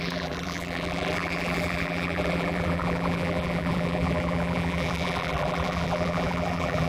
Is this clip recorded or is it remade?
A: remade